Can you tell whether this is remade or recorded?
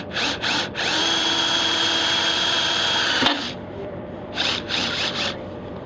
remade